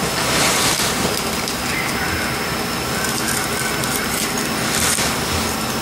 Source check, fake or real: real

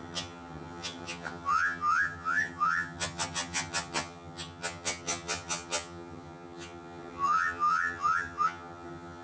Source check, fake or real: fake